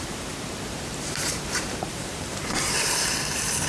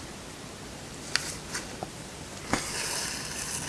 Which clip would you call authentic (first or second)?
second